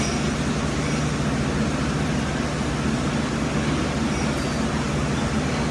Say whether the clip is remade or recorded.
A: recorded